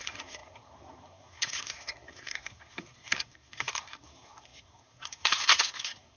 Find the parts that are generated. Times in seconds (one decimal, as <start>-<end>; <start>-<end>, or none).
0.0-6.2